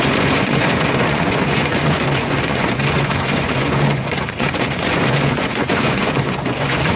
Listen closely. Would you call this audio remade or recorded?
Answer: remade